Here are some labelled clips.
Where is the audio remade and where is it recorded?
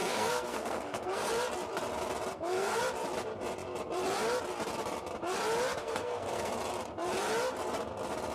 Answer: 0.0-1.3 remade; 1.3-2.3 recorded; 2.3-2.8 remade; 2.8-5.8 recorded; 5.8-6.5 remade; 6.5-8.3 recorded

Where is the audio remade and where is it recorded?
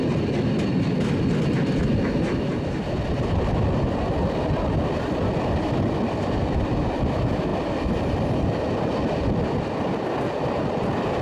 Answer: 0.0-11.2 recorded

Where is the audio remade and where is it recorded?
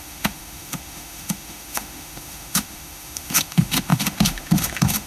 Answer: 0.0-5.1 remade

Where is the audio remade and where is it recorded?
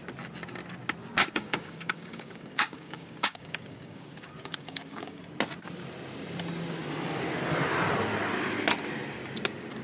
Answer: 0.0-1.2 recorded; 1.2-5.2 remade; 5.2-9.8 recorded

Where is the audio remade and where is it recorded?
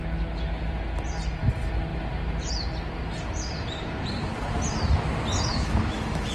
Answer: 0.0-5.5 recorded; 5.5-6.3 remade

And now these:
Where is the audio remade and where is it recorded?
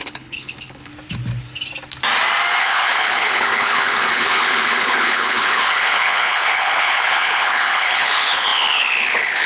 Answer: 0.0-0.9 remade; 0.9-2.6 recorded; 2.6-9.5 remade